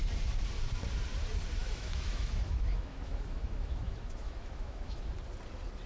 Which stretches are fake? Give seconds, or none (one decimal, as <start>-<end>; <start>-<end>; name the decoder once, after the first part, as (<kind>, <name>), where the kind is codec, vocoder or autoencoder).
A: 1.6-5.1 (autoencoder, DAC-VAE)